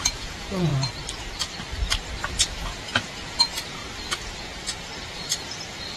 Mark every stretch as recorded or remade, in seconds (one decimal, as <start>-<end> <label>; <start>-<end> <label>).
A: 0.0-0.7 remade; 0.7-2.3 recorded; 2.3-3.8 remade; 3.8-6.0 recorded